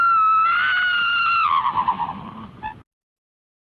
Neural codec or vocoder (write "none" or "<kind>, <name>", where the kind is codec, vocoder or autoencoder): none